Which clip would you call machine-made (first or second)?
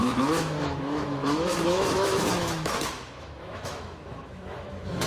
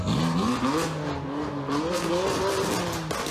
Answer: first